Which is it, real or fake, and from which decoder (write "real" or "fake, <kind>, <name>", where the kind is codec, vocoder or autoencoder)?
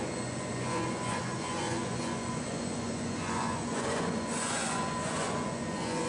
fake, vocoder, Vocos